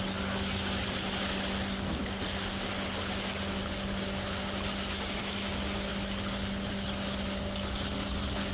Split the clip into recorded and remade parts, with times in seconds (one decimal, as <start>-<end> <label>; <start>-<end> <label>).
0.0-8.5 recorded